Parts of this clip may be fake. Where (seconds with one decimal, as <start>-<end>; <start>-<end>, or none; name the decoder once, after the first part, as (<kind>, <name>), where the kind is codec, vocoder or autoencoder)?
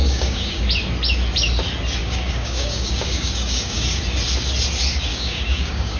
0.0-0.6 (codec, DAC); 2.0-4.0; 5.1-6.0